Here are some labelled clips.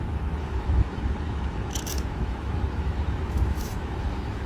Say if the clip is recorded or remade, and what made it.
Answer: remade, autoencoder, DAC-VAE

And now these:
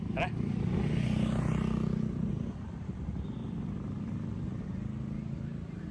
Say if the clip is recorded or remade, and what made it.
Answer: recorded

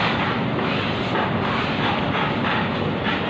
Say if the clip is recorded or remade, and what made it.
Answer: recorded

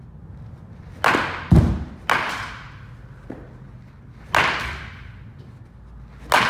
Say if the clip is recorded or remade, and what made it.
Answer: recorded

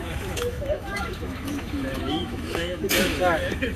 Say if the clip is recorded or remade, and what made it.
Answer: remade, autoencoder, DAC-VAE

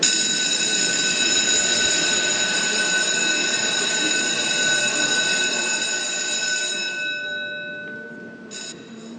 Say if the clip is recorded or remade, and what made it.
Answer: recorded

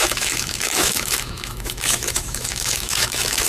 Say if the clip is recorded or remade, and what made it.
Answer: remade, autoencoder, DAC-VAE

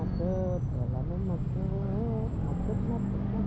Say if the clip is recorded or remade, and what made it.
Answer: recorded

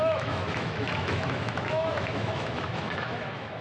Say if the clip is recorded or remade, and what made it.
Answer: remade, autoencoder, DAC-VAE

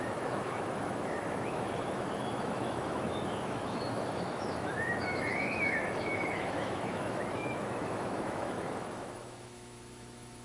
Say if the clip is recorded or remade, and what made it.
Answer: remade, autoencoder, DAC-VAE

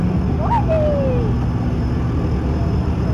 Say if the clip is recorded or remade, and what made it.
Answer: recorded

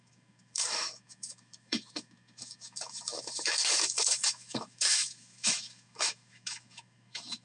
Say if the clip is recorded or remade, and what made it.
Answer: remade, autoencoder, DAC-VAE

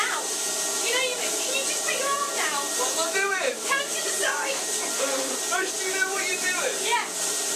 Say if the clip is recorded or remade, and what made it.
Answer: recorded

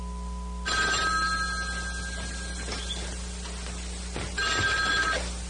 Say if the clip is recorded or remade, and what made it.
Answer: recorded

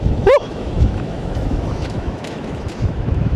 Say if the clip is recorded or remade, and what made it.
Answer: remade, autoencoder, DAC-VAE